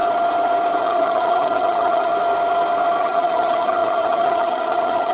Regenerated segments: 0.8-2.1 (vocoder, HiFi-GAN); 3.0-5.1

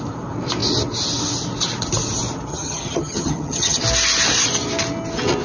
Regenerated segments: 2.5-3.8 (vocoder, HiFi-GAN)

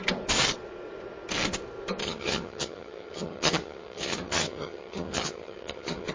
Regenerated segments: 2.0-6.1 (vocoder, HiFi-GAN)

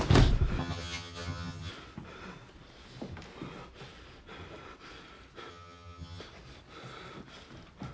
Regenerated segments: 0.6-1.7 (vocoder, HiFi-GAN); 5.5-6.2